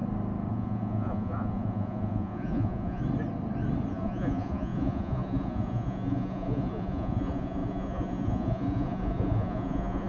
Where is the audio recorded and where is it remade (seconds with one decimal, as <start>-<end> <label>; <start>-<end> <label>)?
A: 0.0-0.5 recorded; 0.5-3.0 remade; 3.0-3.9 recorded; 3.9-10.1 remade